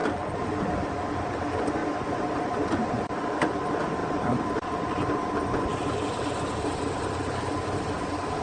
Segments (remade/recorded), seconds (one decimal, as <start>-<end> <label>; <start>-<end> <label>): 0.0-8.4 recorded